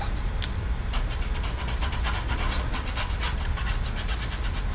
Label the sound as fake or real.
real